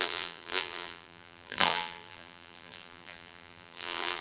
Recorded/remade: remade